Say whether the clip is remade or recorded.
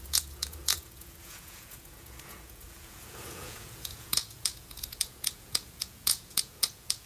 remade